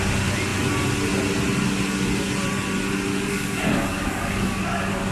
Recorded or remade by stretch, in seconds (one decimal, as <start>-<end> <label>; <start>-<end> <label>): 0.0-3.1 recorded; 3.1-5.1 remade